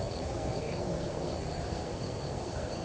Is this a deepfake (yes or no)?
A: yes